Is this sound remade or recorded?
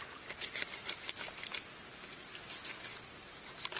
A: recorded